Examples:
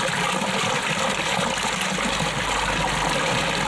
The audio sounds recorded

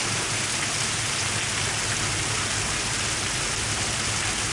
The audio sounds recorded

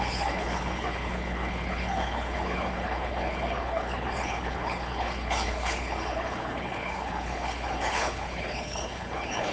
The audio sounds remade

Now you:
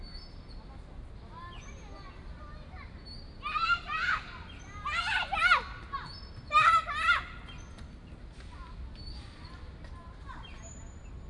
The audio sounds recorded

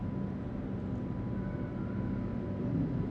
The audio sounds recorded